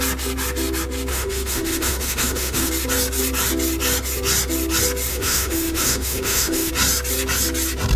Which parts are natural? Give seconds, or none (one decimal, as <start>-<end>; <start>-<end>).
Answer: 0.0-1.1; 2.7-5.1; 6.7-8.0